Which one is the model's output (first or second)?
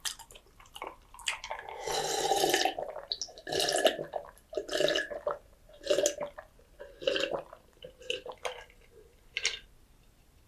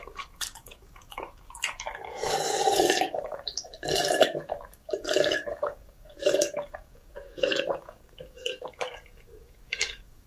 second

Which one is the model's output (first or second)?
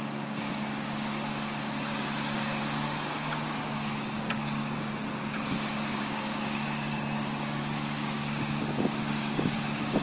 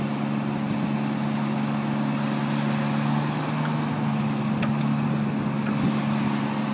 first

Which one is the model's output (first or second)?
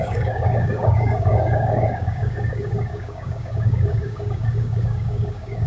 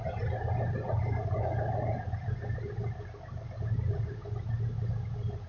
first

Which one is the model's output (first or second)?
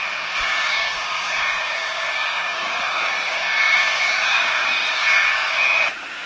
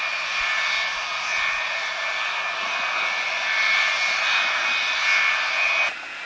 first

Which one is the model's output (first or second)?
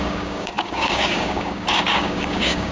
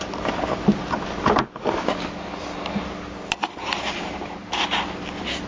first